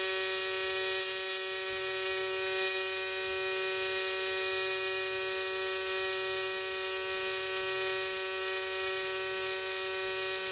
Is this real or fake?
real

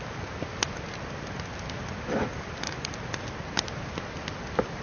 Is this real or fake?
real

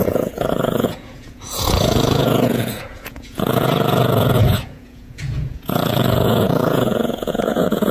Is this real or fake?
fake